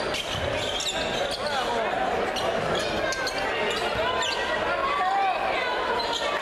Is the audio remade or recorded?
recorded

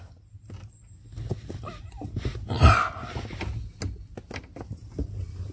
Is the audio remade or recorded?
recorded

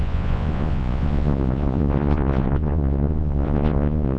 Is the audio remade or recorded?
remade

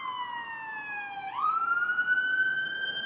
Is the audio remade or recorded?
recorded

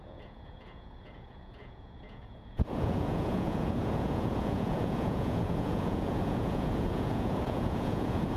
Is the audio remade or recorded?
remade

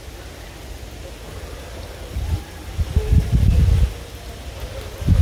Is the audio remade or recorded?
recorded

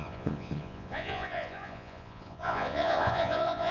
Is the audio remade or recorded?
remade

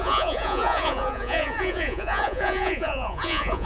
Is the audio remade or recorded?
remade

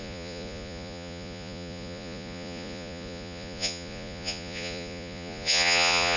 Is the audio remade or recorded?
remade